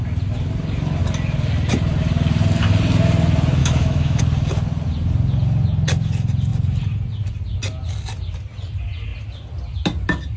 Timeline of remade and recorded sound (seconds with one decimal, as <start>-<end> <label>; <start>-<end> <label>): 0.0-3.6 recorded; 3.6-4.2 remade; 4.2-10.4 recorded

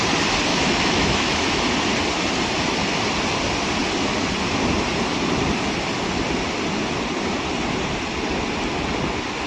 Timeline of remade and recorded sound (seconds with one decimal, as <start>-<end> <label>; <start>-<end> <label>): 0.0-0.5 recorded; 0.5-1.6 remade; 1.6-9.5 recorded

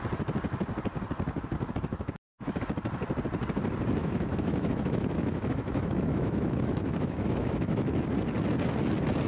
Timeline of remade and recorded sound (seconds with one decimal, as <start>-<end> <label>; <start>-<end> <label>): 0.0-1.9 recorded; 1.9-2.6 remade; 2.6-4.0 recorded; 4.0-8.0 remade; 8.0-9.3 recorded